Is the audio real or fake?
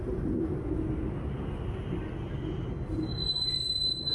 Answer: real